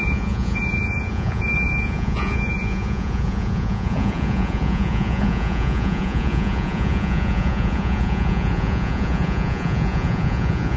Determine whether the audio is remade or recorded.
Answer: remade